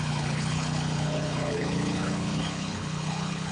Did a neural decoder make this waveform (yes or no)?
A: yes